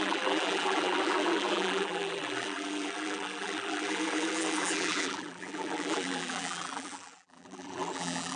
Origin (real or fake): fake